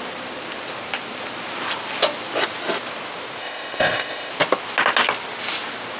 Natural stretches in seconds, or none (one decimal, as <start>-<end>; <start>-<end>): 0.0-3.4; 4.3-6.0